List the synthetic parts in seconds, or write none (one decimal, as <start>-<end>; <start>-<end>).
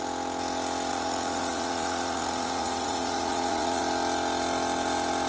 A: 0.9-3.8